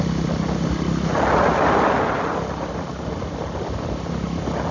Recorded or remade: recorded